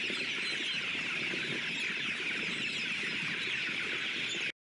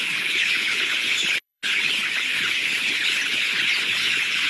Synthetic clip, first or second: second